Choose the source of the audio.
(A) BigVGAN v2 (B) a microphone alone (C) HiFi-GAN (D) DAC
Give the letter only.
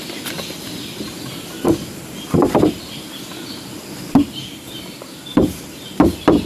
B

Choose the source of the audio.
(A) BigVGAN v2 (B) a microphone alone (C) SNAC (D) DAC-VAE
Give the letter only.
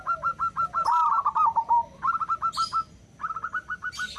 B